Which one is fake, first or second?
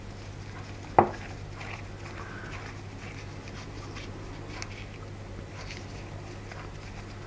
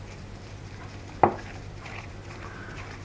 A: second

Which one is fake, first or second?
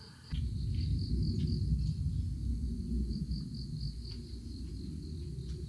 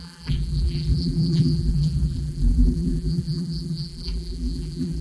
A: second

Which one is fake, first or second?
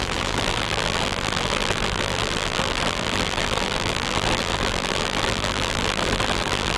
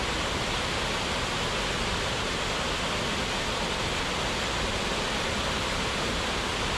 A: first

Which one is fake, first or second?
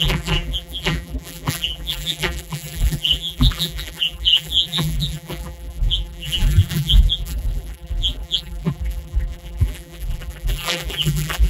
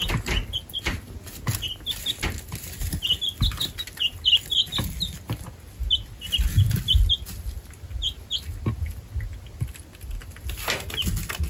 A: first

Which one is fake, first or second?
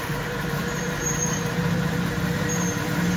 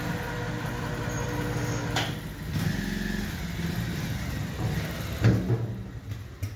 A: first